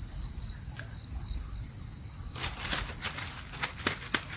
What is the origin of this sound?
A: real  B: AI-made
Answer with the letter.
A